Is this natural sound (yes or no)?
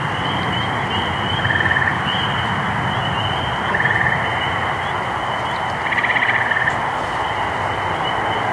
yes